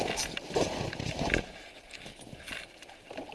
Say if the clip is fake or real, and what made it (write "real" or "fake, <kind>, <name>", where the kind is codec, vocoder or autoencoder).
real